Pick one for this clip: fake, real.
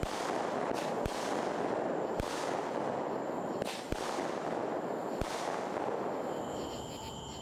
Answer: real